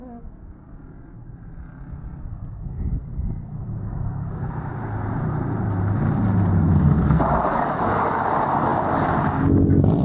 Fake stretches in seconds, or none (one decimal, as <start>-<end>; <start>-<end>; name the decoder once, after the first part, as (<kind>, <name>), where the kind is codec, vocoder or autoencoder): 2.3-4.5 (codec, SNAC); 6.7-7.2